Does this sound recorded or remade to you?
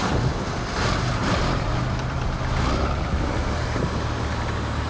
recorded